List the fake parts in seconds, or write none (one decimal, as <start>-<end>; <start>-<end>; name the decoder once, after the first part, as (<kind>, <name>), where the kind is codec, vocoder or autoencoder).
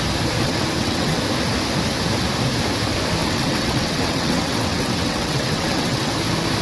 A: 0.4-1.2 (vocoder, WaveNeXt); 3.2-6.1